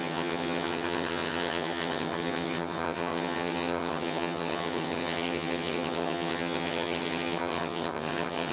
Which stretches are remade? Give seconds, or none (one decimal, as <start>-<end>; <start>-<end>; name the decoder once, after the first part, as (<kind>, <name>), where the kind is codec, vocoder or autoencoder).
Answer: 0.0-8.5 (vocoder, HiFi-GAN)